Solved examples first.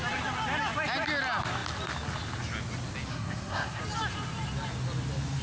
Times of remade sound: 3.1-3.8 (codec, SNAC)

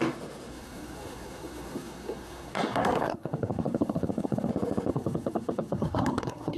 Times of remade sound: 0.5-4.5 (codec, SNAC); 4.9-6.6

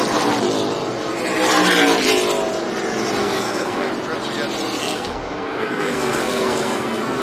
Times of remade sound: 3.2-3.9 (codec, SNAC); 4.8-7.2